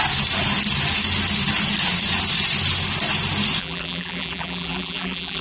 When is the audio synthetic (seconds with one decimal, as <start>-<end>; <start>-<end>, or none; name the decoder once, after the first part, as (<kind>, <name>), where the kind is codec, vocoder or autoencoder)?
3.6-5.4 (vocoder, BigVGAN v2)